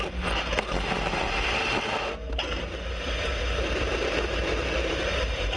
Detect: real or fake real